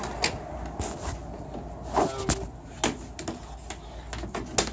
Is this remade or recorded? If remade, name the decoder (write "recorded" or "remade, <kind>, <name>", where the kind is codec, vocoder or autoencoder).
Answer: recorded